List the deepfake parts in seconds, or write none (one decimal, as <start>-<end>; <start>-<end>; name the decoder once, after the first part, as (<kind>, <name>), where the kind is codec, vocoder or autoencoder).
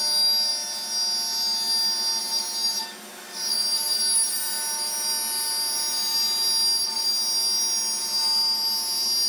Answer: none